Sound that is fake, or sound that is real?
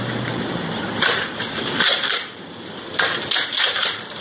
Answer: fake